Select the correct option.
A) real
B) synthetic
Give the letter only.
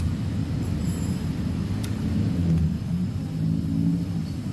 A